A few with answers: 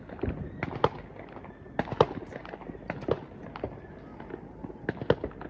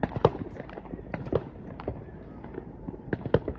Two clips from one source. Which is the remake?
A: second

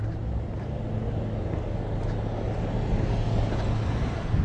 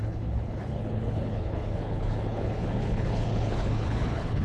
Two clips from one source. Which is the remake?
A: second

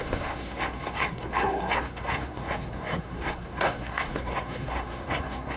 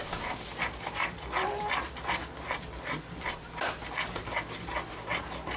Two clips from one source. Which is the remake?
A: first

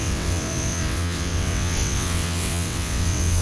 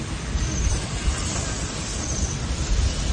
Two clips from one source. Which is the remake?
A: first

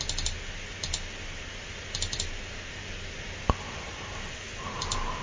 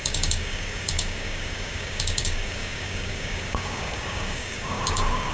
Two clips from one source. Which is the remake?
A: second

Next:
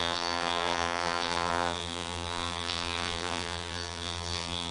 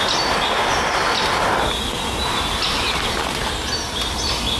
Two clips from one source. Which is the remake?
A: first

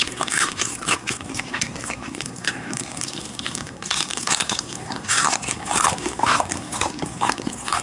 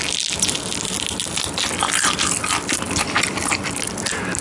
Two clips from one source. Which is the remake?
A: first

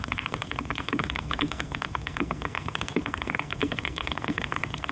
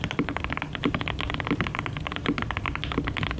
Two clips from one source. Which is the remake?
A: first